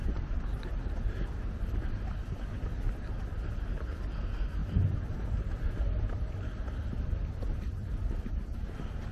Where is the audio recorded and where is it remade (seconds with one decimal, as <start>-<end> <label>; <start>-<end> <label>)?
0.0-1.5 remade; 1.5-4.6 recorded; 4.6-8.2 remade; 8.2-9.1 recorded